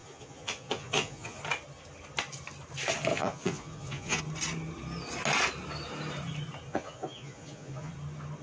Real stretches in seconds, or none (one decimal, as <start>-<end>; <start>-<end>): 1.4-3.1; 4.2-6.7; 7.9-8.4